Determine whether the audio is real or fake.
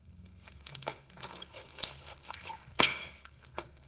fake